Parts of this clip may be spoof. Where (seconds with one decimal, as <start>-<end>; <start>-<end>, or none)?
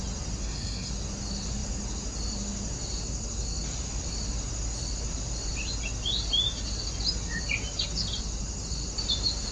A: 0.4-0.9